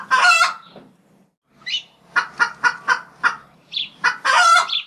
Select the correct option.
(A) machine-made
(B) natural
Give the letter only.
B